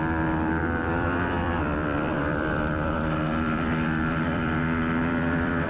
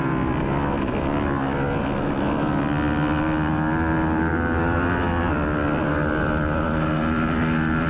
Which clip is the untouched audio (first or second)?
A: second